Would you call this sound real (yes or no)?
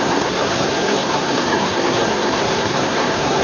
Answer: no